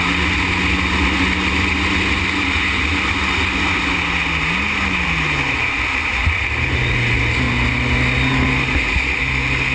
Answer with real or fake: real